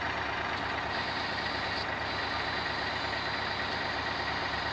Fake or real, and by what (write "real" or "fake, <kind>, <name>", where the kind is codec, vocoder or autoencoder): real